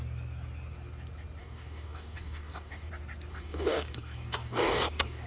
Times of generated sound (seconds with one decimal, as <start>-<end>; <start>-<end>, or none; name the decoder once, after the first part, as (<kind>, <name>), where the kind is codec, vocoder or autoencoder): 1.4-2.9 (codec, DAC); 3.3-5.3